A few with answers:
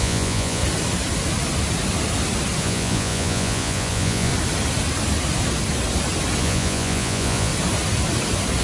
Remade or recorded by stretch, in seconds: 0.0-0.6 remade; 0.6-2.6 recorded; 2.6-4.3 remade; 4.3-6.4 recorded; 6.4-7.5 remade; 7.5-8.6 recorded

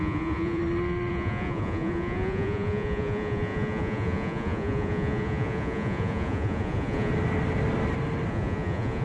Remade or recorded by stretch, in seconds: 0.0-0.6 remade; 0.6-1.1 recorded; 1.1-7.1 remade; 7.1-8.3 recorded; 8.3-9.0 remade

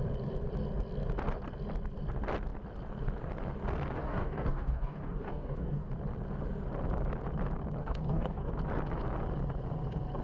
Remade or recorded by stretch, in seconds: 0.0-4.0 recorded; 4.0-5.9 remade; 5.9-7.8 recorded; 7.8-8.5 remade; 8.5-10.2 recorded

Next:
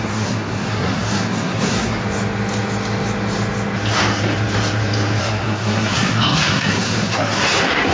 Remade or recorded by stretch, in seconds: 0.0-2.0 remade; 2.0-5.2 recorded; 5.2-7.9 remade

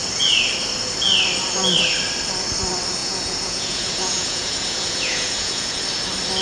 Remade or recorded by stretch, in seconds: 0.0-3.0 recorded; 3.0-5.8 remade; 5.8-6.4 recorded